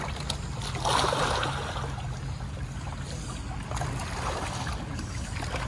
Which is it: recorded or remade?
recorded